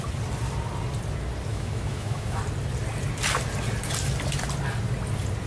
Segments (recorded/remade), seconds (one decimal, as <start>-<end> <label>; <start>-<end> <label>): 0.0-1.5 recorded; 1.5-2.4 remade; 2.4-5.5 recorded